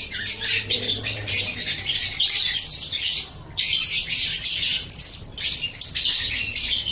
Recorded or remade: recorded